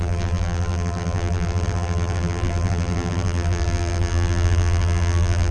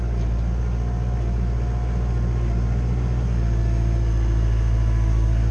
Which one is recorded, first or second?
second